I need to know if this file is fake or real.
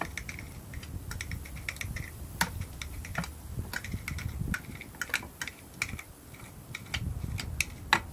real